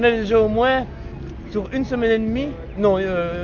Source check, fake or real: real